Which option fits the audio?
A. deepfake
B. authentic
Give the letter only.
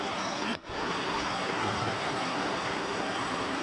A